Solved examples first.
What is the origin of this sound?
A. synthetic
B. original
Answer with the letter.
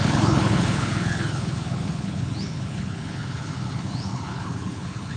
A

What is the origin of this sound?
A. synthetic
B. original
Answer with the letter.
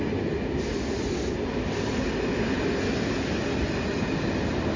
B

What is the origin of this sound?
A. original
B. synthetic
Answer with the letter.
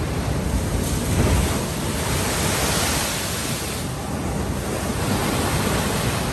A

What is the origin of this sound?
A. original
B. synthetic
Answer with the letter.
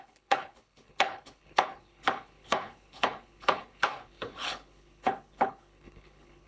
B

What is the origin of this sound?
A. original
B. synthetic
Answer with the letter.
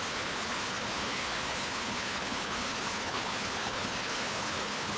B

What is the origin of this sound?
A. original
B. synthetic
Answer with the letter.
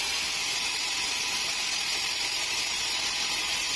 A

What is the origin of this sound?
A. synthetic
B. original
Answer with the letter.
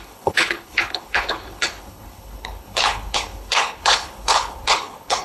A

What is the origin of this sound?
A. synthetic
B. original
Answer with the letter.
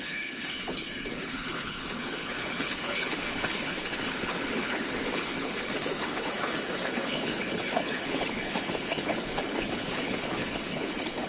A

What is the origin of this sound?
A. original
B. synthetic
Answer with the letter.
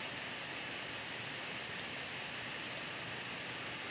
A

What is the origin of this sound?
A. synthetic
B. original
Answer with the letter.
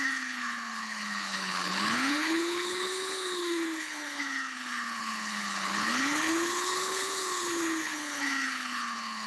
A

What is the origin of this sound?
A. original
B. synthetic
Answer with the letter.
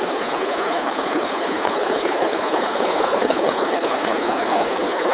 B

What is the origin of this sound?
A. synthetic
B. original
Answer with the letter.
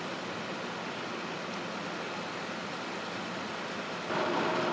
B